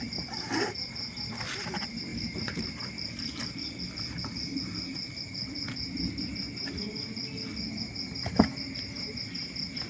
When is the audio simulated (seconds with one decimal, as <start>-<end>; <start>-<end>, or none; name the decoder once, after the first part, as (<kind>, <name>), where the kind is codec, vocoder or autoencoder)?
2.1-3.5 (vocoder, BigVGAN v2)